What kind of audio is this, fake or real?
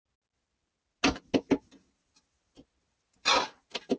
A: real